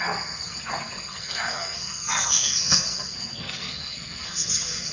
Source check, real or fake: fake